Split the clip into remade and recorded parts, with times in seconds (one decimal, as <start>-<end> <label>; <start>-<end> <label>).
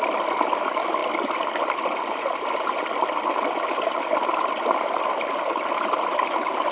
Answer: 0.0-6.7 recorded